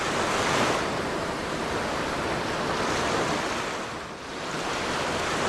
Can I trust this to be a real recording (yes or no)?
yes